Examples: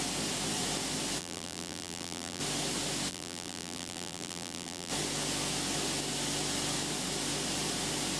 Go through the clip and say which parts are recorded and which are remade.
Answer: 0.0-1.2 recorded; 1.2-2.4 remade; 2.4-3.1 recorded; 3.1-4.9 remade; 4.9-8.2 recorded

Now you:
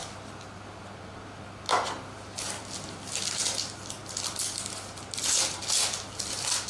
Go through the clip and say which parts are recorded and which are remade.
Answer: 0.0-6.7 recorded

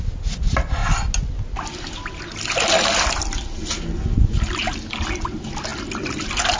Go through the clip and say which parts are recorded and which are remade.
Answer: 0.0-6.6 recorded

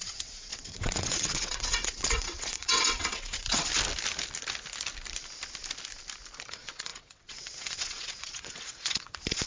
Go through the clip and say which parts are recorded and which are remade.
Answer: 0.0-3.7 remade; 3.7-6.5 recorded; 6.5-9.5 remade